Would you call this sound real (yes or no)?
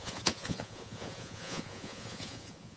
no